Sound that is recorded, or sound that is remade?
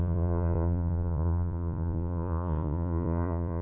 remade